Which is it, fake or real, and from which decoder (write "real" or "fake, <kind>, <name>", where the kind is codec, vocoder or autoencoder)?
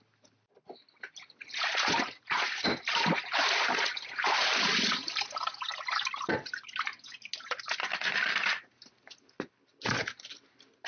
real